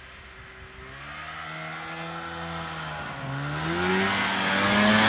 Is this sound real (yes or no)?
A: yes